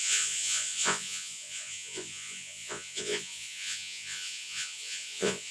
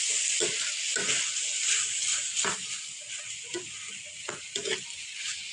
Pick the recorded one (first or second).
second